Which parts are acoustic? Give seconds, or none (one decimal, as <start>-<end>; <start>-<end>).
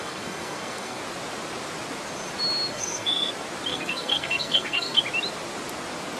1.0-2.7; 3.3-3.7; 5.0-6.2